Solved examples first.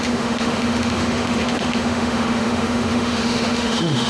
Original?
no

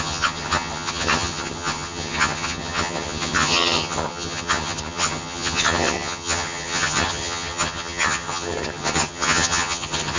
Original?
no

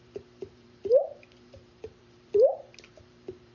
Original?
no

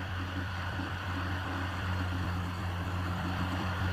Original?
no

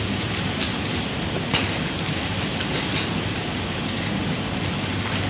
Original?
yes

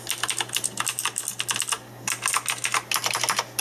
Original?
yes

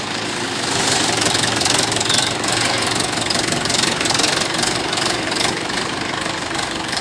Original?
no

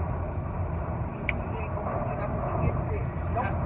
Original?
yes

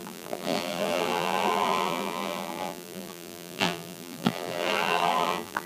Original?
no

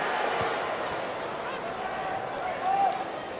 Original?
yes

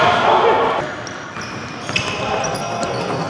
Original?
yes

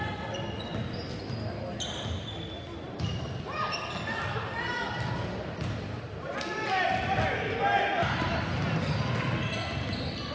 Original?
yes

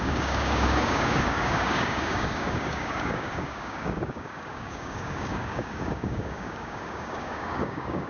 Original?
no